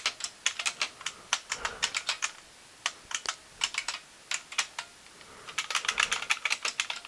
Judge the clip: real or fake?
real